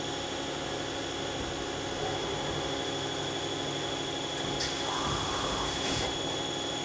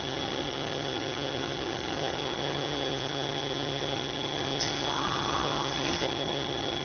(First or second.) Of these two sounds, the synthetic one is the second